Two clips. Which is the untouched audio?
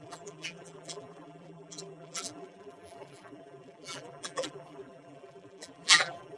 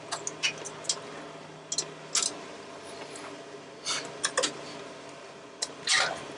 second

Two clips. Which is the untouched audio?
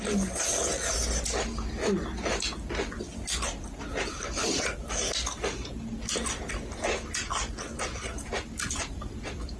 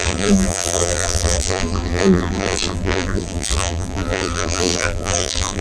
first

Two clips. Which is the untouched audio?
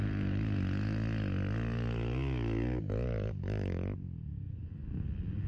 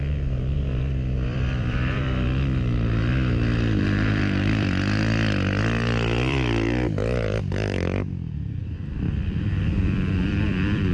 first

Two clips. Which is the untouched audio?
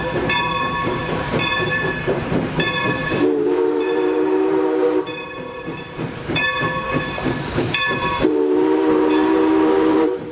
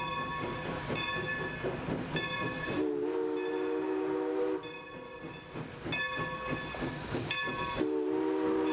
second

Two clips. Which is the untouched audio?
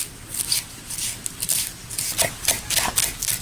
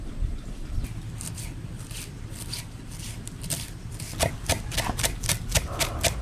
first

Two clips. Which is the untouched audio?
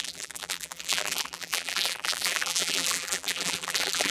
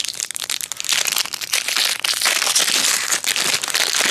second